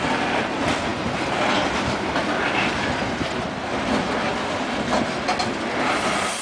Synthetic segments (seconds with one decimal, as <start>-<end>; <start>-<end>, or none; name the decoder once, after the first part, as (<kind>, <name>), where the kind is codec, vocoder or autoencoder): none